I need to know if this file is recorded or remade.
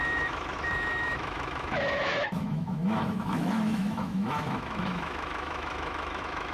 remade